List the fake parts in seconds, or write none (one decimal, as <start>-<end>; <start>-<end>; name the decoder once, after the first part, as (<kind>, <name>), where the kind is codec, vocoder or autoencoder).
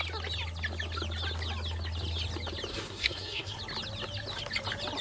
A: 2.7-3.6 (codec, SNAC)